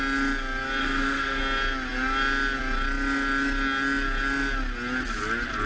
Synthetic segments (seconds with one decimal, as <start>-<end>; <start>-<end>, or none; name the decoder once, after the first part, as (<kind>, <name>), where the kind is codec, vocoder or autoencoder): 0.8-1.4 (codec, SNAC)